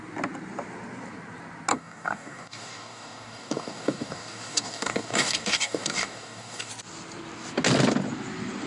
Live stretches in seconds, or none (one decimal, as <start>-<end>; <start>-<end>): 0.0-1.7; 6.7-8.7